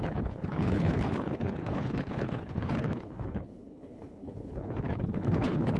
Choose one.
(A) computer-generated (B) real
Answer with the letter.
A